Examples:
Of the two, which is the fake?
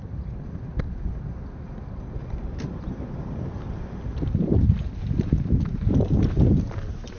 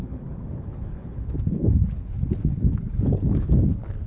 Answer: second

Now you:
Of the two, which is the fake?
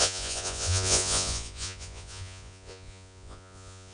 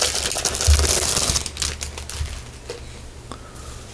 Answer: first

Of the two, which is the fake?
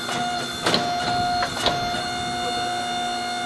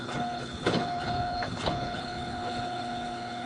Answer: second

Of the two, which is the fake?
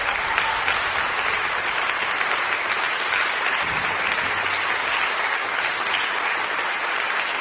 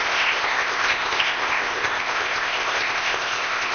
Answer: second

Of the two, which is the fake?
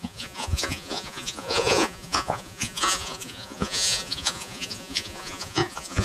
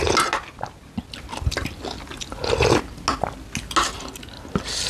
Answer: first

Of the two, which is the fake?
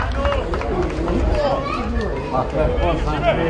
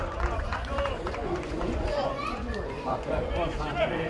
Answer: second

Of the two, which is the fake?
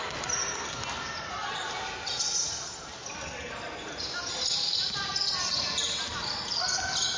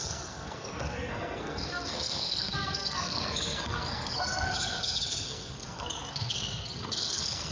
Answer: second